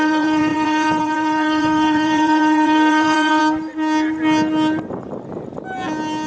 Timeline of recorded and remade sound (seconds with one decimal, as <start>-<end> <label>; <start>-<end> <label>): 0.0-3.4 remade; 3.4-6.3 recorded